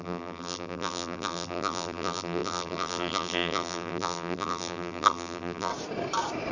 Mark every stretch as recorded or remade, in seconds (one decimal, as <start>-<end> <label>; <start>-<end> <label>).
0.0-5.7 remade; 5.7-6.5 recorded